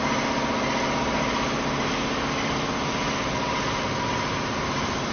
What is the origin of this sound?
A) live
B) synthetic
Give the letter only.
A